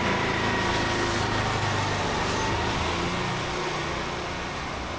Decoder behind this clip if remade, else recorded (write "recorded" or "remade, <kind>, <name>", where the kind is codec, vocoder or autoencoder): recorded